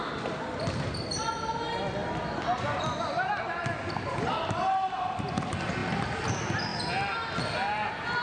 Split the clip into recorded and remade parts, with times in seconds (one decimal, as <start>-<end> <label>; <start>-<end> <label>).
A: 0.0-8.2 recorded